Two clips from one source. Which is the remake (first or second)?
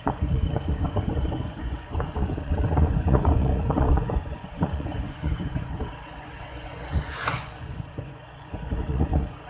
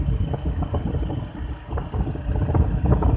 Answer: first